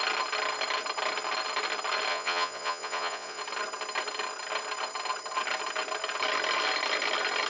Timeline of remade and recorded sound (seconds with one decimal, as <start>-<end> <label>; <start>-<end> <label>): 0.0-2.1 recorded; 2.1-3.4 remade; 3.4-7.5 recorded